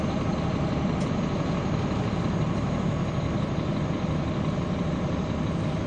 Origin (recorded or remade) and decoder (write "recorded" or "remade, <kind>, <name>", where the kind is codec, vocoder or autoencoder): recorded